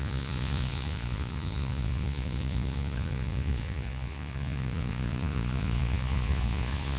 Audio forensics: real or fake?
fake